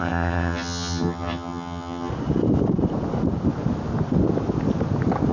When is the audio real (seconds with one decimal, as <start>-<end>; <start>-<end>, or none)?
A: 2.1-5.3

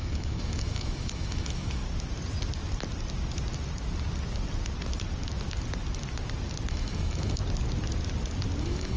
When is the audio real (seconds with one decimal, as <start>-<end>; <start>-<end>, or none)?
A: 1.8-6.7; 7.4-8.6

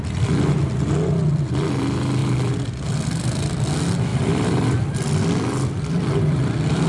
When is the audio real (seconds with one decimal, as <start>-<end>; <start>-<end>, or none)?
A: 0.0-1.2; 1.8-2.2; 2.8-4.1; 4.9-6.9

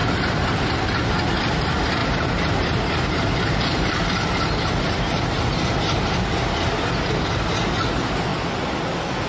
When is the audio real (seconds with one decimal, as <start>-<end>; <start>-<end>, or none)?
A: 0.7-2.0; 7.1-9.3

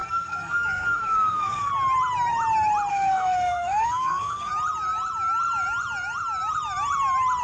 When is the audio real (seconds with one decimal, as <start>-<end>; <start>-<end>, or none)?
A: 1.7-2.9; 4.5-7.4

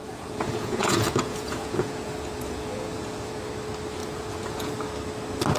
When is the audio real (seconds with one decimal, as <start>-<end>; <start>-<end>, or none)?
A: 3.3-4.0; 4.7-5.6